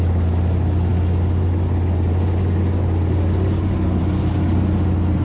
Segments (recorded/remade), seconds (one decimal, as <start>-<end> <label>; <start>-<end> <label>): 0.0-5.2 recorded